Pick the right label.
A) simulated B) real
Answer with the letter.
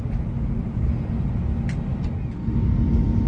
B